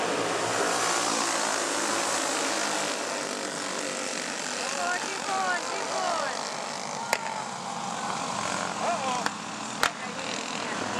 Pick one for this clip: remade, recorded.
recorded